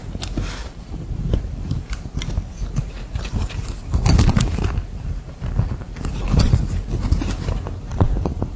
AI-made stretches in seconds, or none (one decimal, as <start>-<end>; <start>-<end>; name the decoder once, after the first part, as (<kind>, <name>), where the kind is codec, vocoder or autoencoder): 0.6-2.3 (vocoder, BigVGAN v2); 2.8-6.6; 7.9-8.6